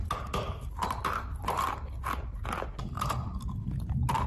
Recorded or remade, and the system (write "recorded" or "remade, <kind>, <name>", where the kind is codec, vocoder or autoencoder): recorded